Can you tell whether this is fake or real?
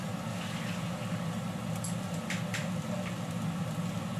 real